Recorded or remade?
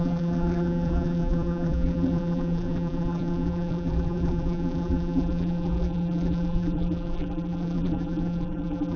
remade